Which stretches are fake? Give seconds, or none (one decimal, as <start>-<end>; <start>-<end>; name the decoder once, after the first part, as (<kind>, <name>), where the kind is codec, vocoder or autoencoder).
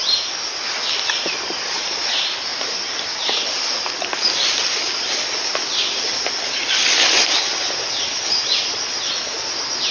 none